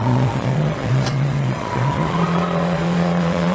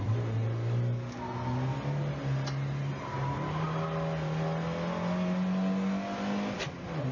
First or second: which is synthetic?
first